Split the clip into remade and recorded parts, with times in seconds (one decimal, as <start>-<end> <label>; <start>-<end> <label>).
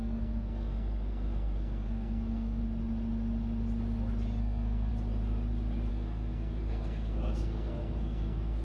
0.0-2.6 remade; 2.6-4.4 recorded; 4.4-4.9 remade; 4.9-5.9 recorded; 5.9-8.6 remade